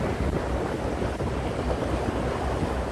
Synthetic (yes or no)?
no